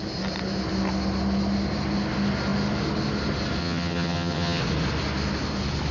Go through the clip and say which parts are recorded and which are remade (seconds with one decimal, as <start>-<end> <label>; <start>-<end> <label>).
0.0-3.6 recorded; 3.6-4.6 remade; 4.6-5.9 recorded

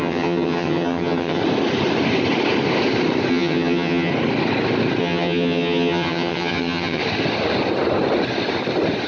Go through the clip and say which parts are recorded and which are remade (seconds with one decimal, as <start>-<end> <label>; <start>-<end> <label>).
0.0-1.4 remade; 1.4-3.3 recorded; 3.3-4.1 remade; 4.1-5.0 recorded; 5.0-7.0 remade; 7.0-9.1 recorded

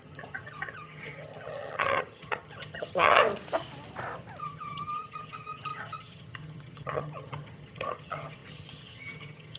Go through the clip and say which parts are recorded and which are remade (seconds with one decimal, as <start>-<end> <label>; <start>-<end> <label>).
0.0-3.2 remade; 3.2-4.4 recorded; 4.4-9.6 remade

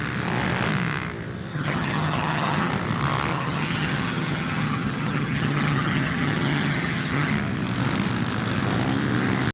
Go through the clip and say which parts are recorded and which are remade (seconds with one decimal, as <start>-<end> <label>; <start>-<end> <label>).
0.0-1.5 recorded; 1.5-2.7 remade; 2.7-3.3 recorded; 3.3-7.3 remade; 7.3-9.5 recorded

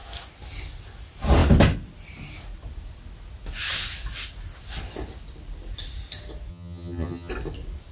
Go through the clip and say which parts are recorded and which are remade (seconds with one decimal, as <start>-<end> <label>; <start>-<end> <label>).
0.0-6.5 recorded; 6.5-7.3 remade; 7.3-7.9 recorded

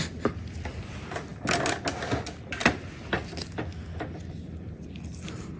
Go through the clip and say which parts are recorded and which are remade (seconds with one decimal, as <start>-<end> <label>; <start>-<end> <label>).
0.0-5.6 recorded

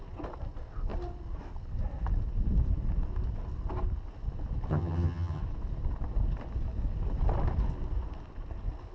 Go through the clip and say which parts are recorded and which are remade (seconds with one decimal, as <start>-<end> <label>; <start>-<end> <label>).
0.0-4.7 recorded; 4.7-5.4 remade; 5.4-8.9 recorded

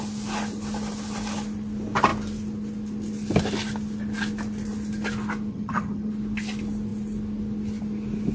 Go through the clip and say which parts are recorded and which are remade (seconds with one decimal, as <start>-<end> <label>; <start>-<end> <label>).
0.0-5.5 recorded; 5.5-6.1 remade; 6.1-8.3 recorded